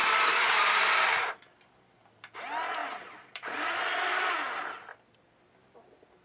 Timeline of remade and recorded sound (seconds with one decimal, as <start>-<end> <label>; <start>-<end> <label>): 0.0-0.9 remade; 0.9-2.8 recorded; 2.8-3.8 remade; 3.8-6.2 recorded